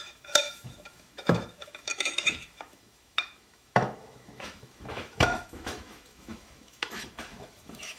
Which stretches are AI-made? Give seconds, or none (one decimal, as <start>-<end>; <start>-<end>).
0.0-8.0